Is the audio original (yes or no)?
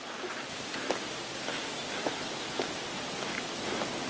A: yes